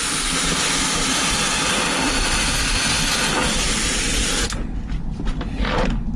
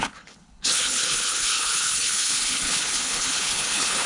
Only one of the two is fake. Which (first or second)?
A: second